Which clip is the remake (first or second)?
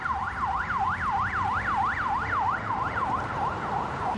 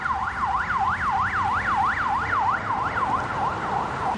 first